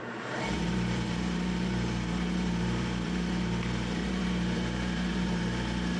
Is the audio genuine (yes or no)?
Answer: no